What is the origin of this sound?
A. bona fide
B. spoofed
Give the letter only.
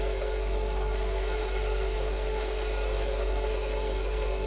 B